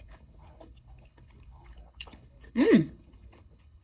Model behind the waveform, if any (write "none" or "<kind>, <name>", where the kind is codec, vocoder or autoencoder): codec, HILCodec